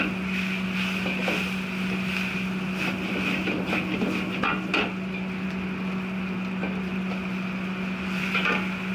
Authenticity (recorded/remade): recorded